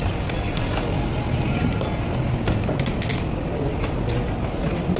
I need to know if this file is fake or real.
real